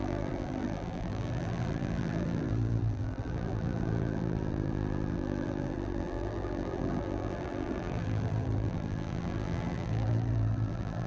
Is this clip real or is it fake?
fake